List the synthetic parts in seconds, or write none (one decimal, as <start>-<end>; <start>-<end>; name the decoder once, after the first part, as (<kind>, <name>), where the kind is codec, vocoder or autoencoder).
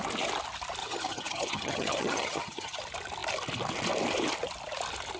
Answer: 0.8-2.8 (vocoder, HiFi-GAN)